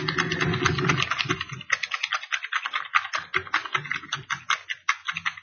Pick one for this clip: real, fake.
real